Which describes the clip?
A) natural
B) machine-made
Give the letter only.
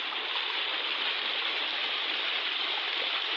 A